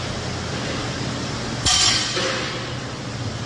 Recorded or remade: recorded